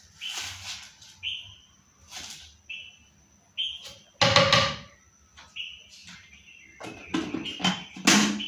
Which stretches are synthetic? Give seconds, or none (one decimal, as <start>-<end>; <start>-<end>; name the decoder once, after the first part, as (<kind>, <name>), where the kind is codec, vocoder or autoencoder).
none

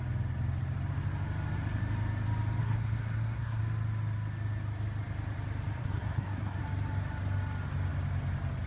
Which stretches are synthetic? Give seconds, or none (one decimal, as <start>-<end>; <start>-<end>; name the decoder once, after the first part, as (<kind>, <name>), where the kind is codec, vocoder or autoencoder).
2.6-3.6 (codec, SNAC); 5.8-6.6

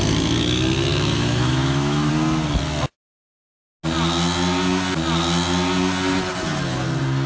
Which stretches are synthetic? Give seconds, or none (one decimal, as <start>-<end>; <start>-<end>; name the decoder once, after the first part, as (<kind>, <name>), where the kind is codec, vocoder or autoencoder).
0.9-2.1 (autoencoder, DAC-VAE)

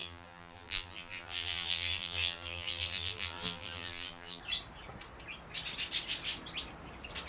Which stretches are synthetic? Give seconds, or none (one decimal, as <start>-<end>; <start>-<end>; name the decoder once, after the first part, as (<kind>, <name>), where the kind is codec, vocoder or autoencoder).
0.0-4.4 (vocoder, BigVGAN v2)

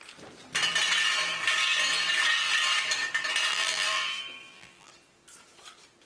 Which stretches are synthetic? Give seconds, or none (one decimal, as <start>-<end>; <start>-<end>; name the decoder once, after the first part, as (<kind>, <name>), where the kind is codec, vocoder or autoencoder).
3.5-4.9 (vocoder, BigVGAN v2)

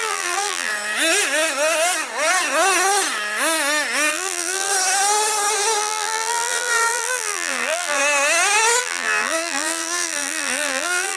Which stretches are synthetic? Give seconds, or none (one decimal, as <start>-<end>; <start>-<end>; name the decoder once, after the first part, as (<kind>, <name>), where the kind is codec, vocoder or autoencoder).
0.0-0.7 (vocoder, BigVGAN v2); 4.1-4.7; 5.8-8.0; 8.8-11.2

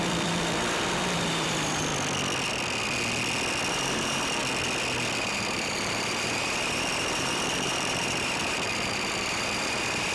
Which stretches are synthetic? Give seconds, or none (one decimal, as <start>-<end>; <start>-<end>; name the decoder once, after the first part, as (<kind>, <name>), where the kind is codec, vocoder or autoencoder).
0.0-1.9 (vocoder, BigVGAN v2); 3.7-4.4; 5.2-10.1

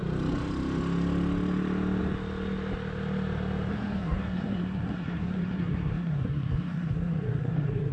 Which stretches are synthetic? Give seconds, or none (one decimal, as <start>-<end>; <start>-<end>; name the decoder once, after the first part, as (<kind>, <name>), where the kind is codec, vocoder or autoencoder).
3.7-7.9 (codec, SNAC)